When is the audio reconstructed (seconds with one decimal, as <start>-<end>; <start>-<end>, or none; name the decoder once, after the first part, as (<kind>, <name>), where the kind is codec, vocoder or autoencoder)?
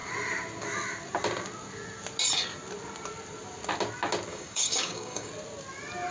4.3-5.3 (codec, DAC)